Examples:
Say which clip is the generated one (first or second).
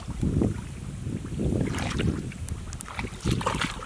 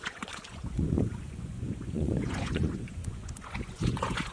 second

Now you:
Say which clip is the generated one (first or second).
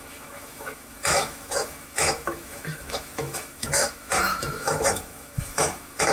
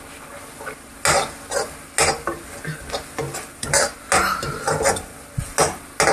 first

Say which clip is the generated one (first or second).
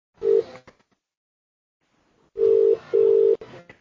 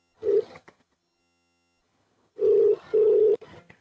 second